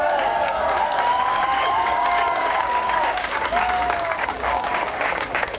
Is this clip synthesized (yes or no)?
yes